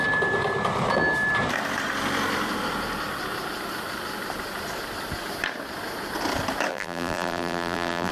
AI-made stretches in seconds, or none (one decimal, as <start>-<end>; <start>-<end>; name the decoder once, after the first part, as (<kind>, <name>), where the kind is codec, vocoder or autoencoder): 6.7-8.1 (vocoder, BigVGAN v2)